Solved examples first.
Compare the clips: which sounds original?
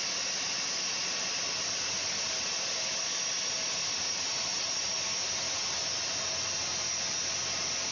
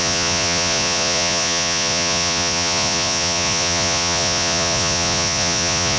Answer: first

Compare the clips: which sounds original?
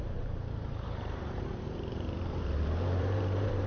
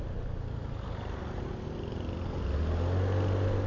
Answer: second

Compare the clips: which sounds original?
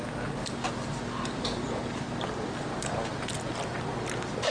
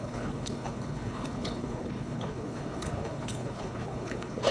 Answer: first